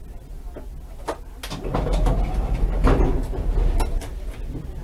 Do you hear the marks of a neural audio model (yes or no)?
no